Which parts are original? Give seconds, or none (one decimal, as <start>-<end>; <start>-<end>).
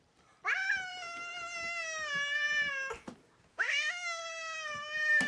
0.0-3.5; 4.2-5.3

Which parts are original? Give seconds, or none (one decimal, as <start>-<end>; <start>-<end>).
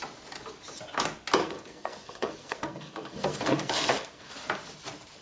0.0-1.4; 4.3-5.2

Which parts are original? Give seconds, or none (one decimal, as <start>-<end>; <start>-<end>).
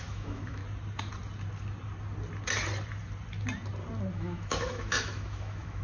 0.6-4.1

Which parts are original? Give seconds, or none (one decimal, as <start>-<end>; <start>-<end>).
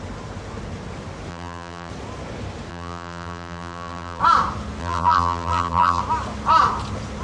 0.0-1.3; 1.9-2.7; 4.2-4.8; 6.0-7.2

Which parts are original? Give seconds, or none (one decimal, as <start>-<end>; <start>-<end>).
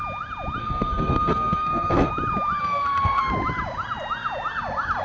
0.0-0.6; 2.1-2.6; 3.3-5.0